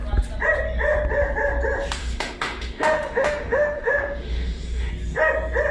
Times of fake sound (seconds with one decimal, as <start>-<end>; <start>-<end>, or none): 2.0-4.9